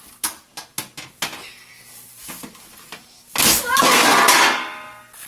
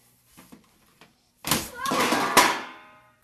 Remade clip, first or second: second